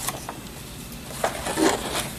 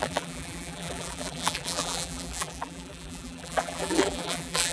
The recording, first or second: first